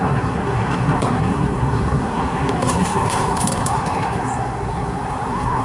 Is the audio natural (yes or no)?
no